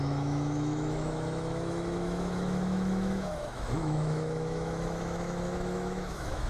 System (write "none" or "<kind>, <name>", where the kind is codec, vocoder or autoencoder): autoencoder, DAC-VAE